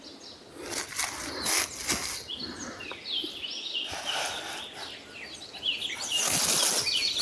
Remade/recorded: recorded